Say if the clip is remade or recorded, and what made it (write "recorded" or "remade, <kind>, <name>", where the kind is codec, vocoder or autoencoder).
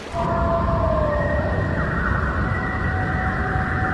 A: recorded